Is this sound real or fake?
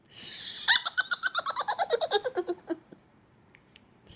fake